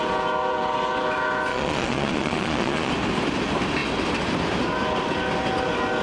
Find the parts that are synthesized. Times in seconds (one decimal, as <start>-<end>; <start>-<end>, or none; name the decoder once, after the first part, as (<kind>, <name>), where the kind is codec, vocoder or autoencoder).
1.5-2.9 (vocoder, Vocos)